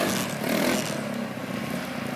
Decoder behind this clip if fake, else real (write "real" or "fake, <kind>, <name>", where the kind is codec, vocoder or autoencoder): real